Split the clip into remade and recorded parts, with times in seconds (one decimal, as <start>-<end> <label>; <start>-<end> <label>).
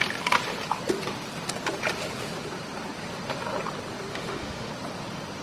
0.0-4.1 recorded; 4.1-4.7 remade; 4.7-5.4 recorded